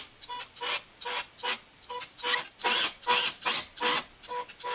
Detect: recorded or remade recorded